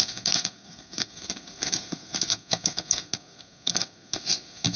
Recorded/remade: remade